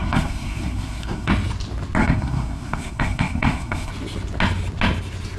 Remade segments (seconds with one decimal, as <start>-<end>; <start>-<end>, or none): 0.0-1.3; 2.0-3.9